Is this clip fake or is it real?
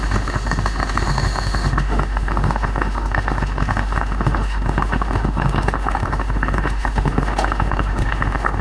fake